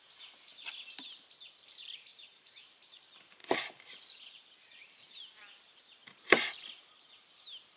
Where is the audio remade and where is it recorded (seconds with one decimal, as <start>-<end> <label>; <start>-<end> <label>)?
0.0-2.1 recorded; 2.1-2.6 remade; 2.6-3.4 recorded; 3.4-3.9 remade; 3.9-4.6 recorded; 4.6-5.2 remade; 5.2-7.8 recorded